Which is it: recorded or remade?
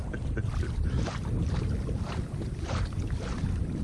recorded